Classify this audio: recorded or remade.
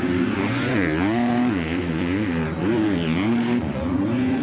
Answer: remade